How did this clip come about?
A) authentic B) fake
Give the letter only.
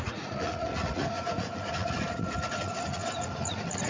B